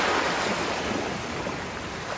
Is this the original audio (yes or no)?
yes